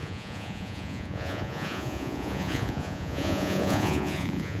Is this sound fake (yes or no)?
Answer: yes